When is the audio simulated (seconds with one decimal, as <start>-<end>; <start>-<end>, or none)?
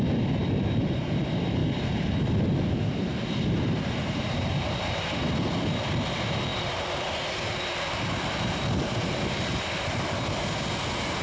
none